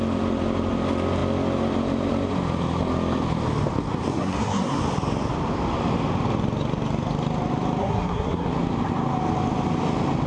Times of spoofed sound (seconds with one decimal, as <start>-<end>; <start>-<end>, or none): 4.1-4.8; 7.8-8.5